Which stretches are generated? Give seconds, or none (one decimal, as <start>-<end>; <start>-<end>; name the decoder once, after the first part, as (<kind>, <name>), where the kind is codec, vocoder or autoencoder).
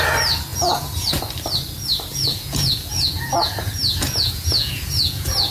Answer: 0.5-1.1 (vocoder, Vocos); 2.1-5.5